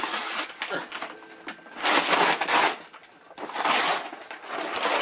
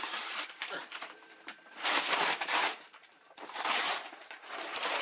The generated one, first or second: second